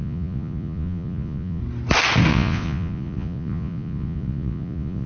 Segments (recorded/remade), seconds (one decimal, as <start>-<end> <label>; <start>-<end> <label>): 0.0-1.6 remade; 1.6-2.3 recorded; 2.3-5.1 remade